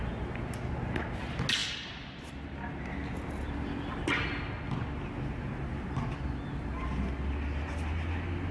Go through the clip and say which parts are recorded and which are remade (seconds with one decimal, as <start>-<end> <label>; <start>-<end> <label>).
0.0-8.5 recorded